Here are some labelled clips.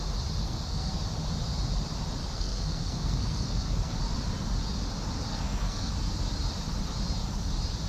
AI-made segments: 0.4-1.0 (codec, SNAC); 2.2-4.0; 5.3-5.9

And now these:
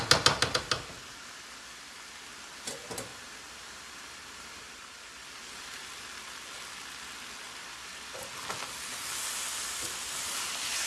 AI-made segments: 3.1-5.9 (vocoder, BigVGAN v2); 7.6-8.3

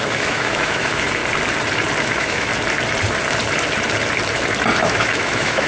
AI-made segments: 0.0-1.2 (autoencoder, DAC-VAE); 2.0-2.5; 4.8-5.7

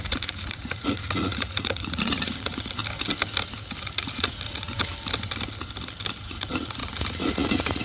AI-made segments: 0.0-2.8 (vocoder, Vocos); 3.8-4.9; 6.2-7.8

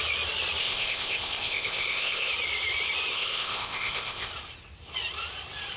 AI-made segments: 0.6-2.3 (codec, ZipCodec); 3.1-4.3